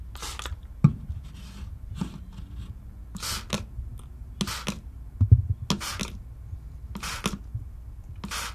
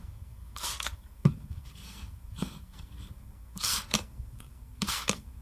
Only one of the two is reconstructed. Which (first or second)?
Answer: second